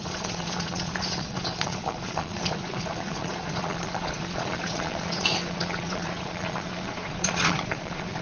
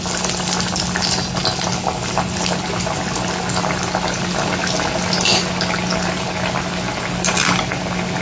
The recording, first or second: second